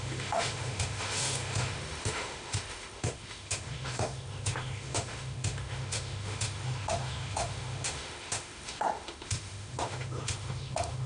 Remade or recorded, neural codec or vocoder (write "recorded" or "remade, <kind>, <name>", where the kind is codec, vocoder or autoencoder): remade, autoencoder, DAC-VAE